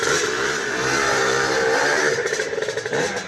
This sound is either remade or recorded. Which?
remade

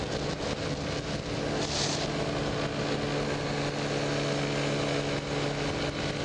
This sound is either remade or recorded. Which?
recorded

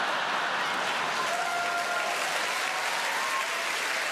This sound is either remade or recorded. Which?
recorded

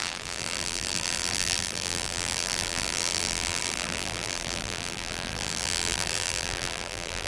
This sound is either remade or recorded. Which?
remade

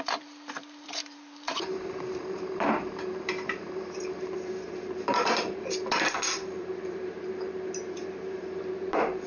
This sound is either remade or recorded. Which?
remade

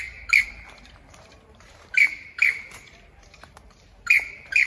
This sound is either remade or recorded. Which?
remade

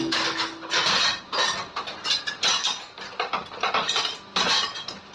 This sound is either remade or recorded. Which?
recorded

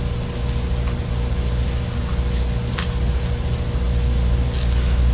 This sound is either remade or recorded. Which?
recorded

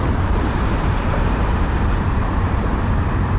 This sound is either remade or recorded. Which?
remade